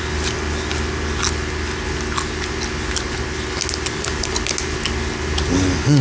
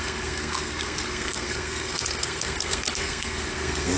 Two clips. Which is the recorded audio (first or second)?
first